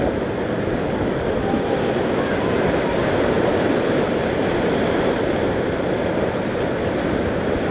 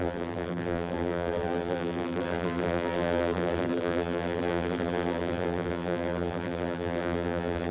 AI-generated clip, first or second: second